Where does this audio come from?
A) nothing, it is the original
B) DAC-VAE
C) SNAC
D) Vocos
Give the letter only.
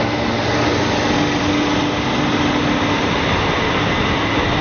A